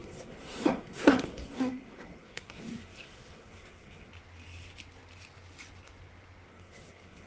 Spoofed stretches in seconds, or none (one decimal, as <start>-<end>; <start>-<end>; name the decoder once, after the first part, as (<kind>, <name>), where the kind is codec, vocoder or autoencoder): 0.0-4.1 (codec, SNAC); 6.5-7.3